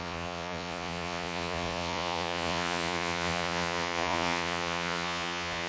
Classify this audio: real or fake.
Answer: fake